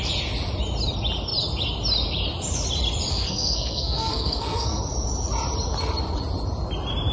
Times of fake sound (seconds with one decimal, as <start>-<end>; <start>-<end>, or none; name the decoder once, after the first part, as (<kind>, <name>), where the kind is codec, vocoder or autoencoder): 3.1-4.8 (codec, SNAC)